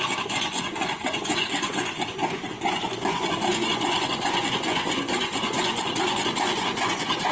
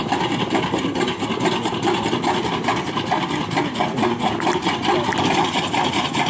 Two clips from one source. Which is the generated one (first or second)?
first